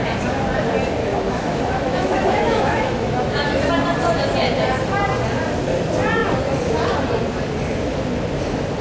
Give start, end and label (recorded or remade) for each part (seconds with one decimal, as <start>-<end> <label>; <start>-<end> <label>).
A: 0.0-1.0 recorded; 1.0-3.7 remade; 3.7-8.8 recorded